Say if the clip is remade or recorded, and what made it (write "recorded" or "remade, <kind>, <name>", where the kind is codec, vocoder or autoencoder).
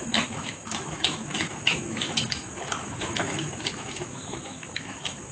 remade, autoencoder, DAC-VAE